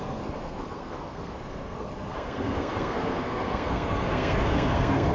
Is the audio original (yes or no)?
no